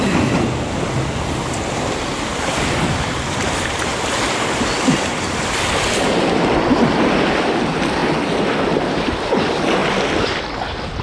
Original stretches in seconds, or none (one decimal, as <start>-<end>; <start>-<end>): 0.0-2.3; 3.4-9.8; 10.4-11.0

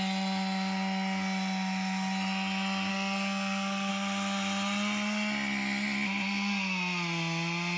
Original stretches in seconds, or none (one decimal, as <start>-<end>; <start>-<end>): 0.0-2.9; 3.9-7.8

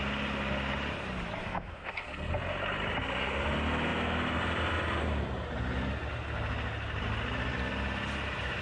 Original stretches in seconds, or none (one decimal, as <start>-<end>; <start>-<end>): 0.0-1.4; 2.3-8.6

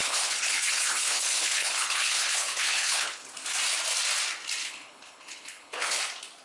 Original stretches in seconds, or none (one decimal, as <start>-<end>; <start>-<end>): 3.3-4.6; 6.0-6.4

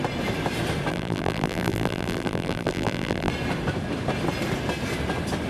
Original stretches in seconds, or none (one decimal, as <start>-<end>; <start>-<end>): 0.0-0.9; 3.3-5.5